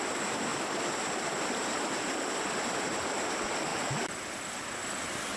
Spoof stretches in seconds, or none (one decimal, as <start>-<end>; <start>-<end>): none